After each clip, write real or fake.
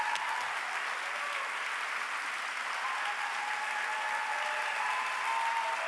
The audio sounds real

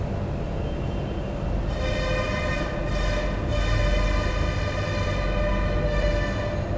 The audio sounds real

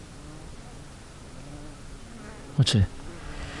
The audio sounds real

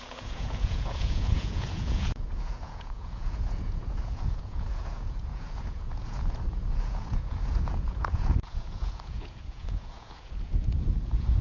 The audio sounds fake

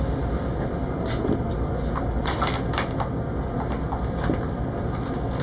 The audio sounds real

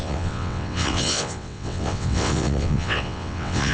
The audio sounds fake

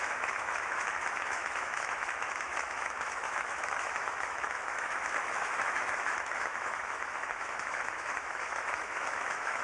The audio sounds fake